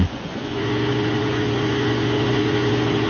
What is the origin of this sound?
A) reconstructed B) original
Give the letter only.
A